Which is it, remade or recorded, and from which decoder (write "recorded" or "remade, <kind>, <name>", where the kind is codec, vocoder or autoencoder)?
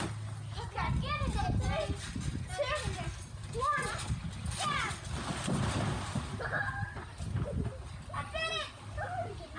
recorded